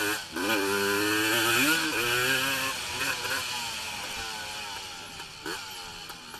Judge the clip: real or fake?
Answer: real